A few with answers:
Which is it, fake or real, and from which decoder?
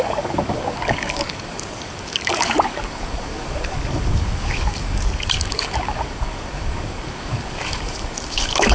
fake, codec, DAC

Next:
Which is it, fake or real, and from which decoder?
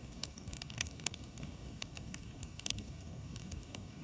fake, codec, DAC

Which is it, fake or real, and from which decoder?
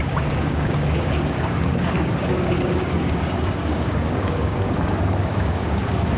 fake, codec, DAC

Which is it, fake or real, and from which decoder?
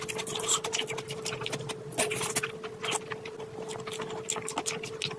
real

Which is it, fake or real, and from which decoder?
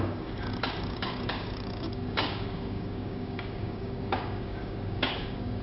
fake, codec, DAC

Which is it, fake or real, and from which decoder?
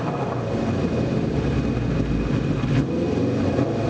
real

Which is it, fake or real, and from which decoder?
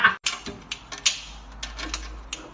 real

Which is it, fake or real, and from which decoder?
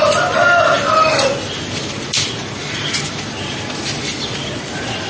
real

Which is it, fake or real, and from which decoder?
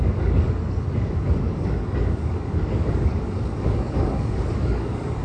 fake, codec, DAC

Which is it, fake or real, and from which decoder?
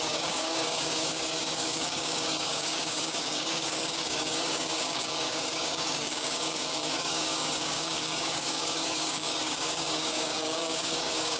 fake, codec, DAC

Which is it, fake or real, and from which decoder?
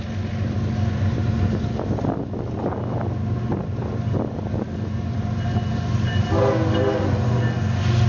real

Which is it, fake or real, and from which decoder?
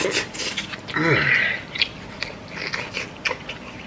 real